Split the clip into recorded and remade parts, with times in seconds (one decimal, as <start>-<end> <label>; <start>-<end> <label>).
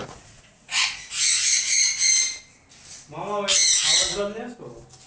0.0-1.8 remade; 1.8-5.1 recorded